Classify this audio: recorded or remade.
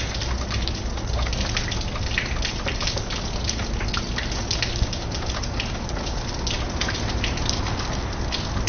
recorded